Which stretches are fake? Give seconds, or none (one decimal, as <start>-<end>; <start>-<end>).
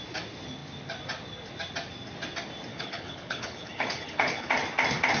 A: 2.7-4.5